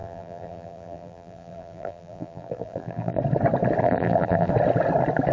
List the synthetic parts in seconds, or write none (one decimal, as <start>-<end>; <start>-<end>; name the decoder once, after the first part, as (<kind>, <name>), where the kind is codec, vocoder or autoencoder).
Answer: 0.0-3.2 (vocoder, BigVGAN v2); 3.8-4.5